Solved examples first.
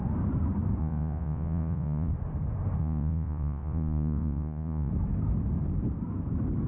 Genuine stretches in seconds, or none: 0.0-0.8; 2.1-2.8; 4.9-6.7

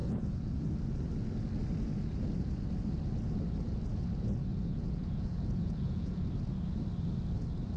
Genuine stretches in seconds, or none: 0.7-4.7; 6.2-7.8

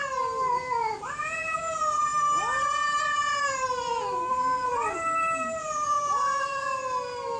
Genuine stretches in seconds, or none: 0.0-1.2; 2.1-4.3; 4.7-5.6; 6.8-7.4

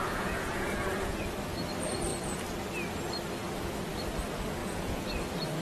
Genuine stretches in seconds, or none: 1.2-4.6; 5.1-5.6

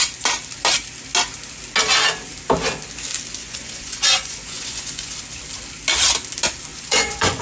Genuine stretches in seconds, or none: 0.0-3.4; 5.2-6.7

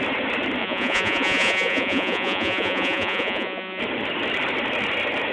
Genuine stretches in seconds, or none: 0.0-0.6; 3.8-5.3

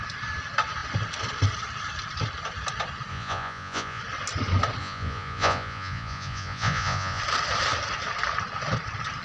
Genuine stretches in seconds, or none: 0.0-3.1; 4.0-4.8; 7.2-9.2

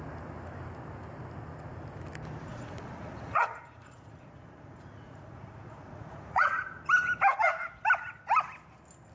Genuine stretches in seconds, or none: 0.0-2.5; 6.8-9.1